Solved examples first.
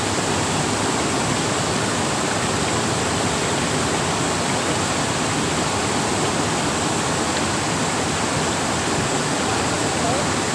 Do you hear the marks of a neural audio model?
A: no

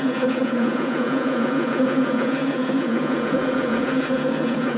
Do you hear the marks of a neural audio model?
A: yes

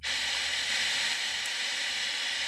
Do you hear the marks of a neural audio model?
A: no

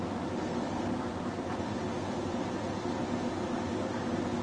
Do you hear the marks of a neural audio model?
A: no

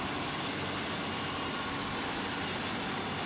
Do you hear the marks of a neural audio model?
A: no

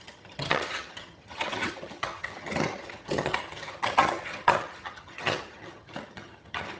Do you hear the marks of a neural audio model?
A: yes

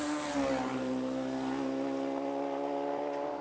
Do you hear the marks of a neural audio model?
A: no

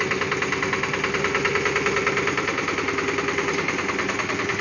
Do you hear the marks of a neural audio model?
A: no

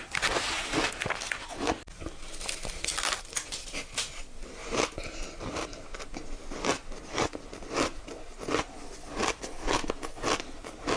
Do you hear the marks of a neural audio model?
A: no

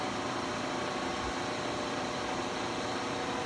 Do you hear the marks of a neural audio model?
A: no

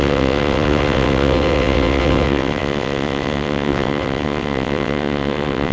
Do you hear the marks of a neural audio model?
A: yes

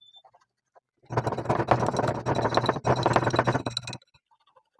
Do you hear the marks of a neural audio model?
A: no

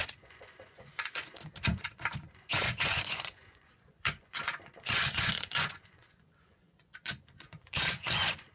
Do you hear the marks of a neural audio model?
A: yes